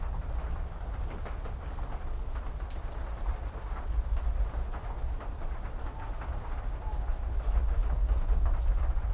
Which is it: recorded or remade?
recorded